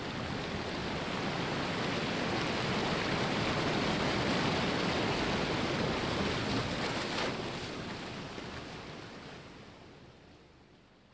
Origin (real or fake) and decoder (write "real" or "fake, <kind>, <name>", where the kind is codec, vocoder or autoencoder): real